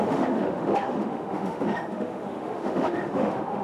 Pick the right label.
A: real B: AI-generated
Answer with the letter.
B